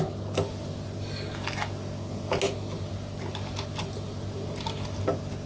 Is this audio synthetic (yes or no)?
no